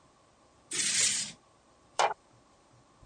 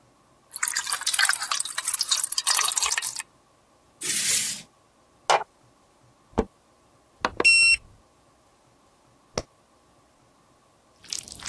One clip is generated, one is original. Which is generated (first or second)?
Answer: first